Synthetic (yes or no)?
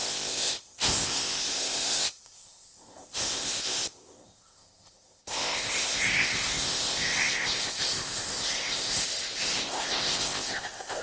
yes